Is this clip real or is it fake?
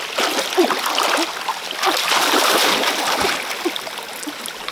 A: real